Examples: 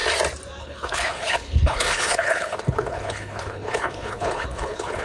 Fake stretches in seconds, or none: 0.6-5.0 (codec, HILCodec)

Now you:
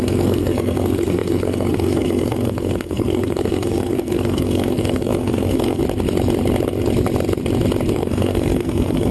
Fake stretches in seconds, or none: 0.0-5.8 (codec, SNAC); 7.9-9.1

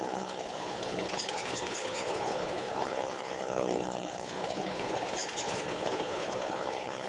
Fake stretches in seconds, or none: 0.0-7.1 (codec, HILCodec)

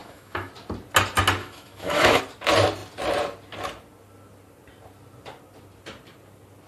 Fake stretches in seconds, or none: 0.0-0.5 (autoencoder, DAC-VAE); 1.4-2.2